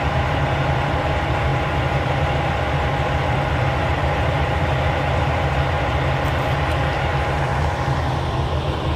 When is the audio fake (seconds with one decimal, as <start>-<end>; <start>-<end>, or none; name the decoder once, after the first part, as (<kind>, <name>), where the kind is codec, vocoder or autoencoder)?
none